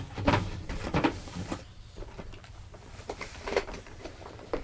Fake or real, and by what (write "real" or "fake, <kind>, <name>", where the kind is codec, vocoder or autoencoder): fake, vocoder, BigVGAN v2